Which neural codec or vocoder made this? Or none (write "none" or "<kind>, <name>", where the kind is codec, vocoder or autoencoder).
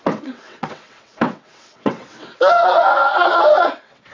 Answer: vocoder, WaveNeXt